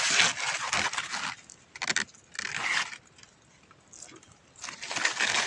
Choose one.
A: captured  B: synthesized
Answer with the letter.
A